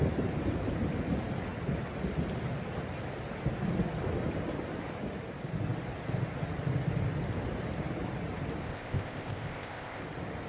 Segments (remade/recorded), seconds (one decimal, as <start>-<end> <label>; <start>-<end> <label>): 0.0-8.6 recorded; 8.6-10.0 remade; 10.0-10.5 recorded